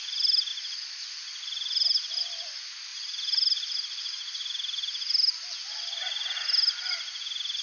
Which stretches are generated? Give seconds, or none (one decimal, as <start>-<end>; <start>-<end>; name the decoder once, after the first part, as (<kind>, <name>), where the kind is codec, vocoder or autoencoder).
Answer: none